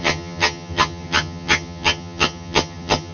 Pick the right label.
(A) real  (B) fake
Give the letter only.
B